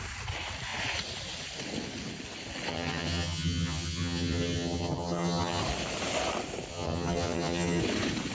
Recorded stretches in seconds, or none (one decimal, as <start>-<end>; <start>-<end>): 0.0-2.7; 5.6-6.7; 7.8-8.3

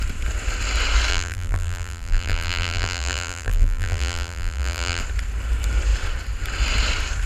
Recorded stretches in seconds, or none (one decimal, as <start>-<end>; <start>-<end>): 0.0-1.1; 5.0-7.3

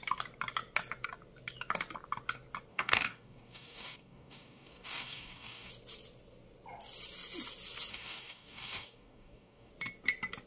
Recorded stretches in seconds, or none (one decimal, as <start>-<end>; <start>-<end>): 0.0-2.7; 5.7-7.9; 9.7-10.5

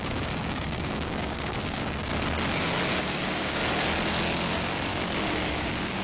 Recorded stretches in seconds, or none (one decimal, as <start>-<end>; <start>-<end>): 2.1-3.0; 3.6-5.5

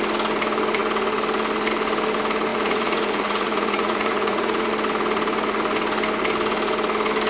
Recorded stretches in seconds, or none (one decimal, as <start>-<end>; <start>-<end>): 0.0-2.5; 4.7-7.3

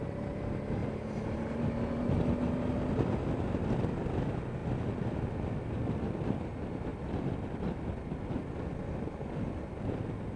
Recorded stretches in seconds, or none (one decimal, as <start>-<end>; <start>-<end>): 0.0-10.4